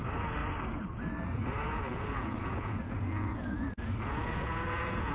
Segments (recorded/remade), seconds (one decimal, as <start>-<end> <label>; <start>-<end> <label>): 0.0-1.6 recorded; 1.6-5.1 remade

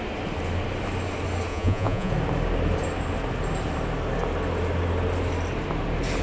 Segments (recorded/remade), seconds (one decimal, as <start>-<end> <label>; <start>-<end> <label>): 0.0-1.5 recorded; 1.5-2.1 remade; 2.1-6.2 recorded

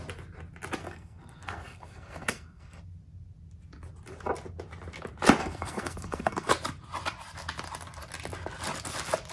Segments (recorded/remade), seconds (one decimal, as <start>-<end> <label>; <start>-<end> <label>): 0.0-0.8 recorded; 0.8-2.8 remade; 2.8-5.4 recorded; 5.4-6.5 remade; 6.5-9.3 recorded

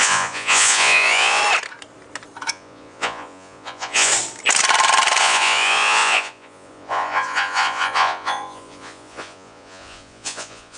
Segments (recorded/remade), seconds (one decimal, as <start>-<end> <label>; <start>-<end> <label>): 0.0-1.4 remade; 1.4-2.5 recorded; 2.5-4.1 remade; 4.1-5.2 recorded; 5.2-10.8 remade